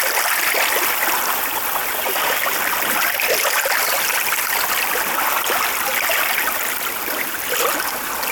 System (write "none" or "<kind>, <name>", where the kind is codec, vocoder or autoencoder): none